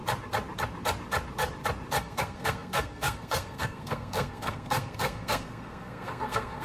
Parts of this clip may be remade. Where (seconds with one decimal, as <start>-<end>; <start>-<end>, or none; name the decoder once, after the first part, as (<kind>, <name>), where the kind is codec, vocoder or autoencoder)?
2.0-6.6 (codec, SNAC)

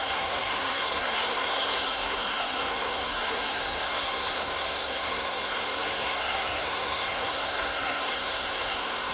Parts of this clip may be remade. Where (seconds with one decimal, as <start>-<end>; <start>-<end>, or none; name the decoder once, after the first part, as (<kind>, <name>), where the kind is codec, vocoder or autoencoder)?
0.0-9.1 (codec, SNAC)

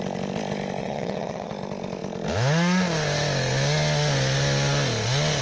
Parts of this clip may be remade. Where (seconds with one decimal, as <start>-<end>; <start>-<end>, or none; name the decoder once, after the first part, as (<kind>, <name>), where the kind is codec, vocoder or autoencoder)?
0.8-1.5 (vocoder, WaveNeXt)

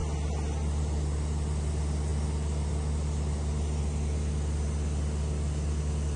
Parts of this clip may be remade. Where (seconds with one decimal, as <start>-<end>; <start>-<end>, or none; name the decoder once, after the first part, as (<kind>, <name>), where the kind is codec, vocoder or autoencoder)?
none

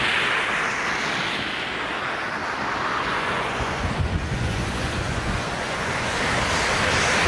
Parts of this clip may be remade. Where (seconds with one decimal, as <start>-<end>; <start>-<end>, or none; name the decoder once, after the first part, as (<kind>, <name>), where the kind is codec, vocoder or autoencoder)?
2.9-6.2 (vocoder, Vocos)

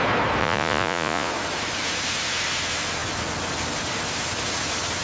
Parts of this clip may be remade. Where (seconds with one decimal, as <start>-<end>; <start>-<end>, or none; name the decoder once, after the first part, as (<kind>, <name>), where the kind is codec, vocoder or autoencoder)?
0.4-1.3 (vocoder, Vocos)

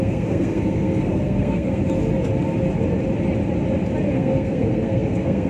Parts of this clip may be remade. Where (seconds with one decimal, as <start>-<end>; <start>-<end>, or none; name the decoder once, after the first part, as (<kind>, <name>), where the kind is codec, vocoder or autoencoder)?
0.0-1.8 (codec, SNAC); 4.1-5.5